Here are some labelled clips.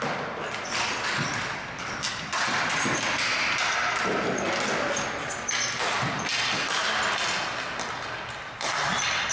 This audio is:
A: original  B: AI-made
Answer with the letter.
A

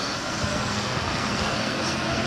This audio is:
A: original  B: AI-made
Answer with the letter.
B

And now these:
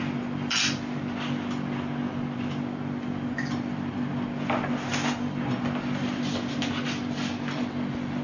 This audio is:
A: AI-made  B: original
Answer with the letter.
B